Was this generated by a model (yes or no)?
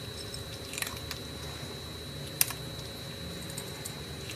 no